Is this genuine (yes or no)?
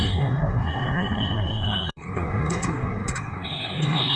no